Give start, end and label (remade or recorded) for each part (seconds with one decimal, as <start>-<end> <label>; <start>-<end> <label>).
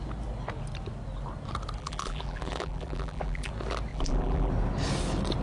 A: 0.0-1.8 recorded; 1.8-3.5 remade; 3.5-3.9 recorded; 3.9-4.5 remade; 4.5-5.4 recorded